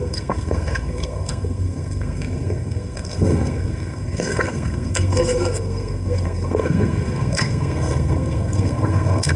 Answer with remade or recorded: remade